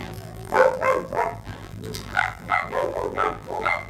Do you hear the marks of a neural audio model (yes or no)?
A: yes